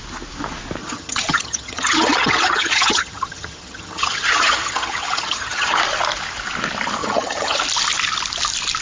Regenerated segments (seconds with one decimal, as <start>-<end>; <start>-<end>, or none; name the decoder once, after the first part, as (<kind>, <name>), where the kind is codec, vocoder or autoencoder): 0.8-5.8 (vocoder, HiFi-GAN); 7.0-7.6